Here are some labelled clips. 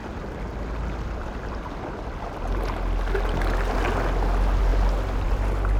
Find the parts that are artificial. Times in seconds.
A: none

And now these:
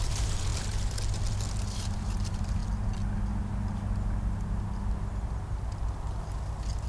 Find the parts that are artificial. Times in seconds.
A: 0.0-0.5 (vocoder, BigVGAN v2); 1.6-2.6

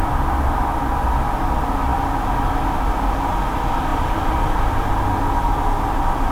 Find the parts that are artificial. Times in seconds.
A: none

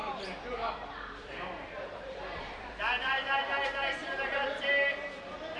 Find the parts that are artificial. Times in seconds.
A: 0.0-3.4 (vocoder, BigVGAN v2); 4.0-4.7

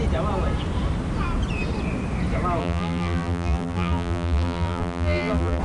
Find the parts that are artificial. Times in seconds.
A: 2.6-5.6 (vocoder, BigVGAN v2)

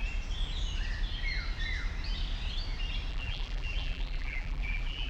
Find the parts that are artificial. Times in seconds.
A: 3.1-5.1 (vocoder, BigVGAN v2)

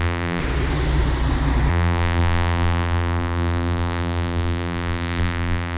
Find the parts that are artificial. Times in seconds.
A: 0.0-0.4 (vocoder, BigVGAN v2); 1.7-5.8